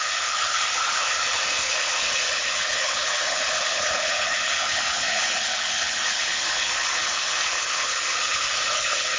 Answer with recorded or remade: remade